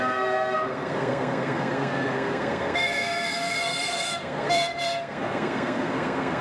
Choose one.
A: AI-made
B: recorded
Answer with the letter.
A